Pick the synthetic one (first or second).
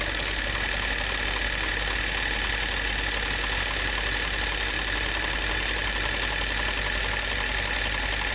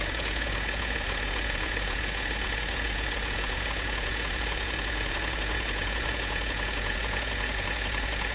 second